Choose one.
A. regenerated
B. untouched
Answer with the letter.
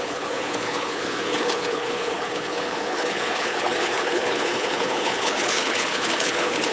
A